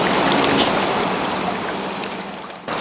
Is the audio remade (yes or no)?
no